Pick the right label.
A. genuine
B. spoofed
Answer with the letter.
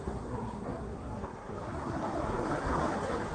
B